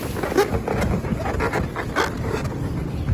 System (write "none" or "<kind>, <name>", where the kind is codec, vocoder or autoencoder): none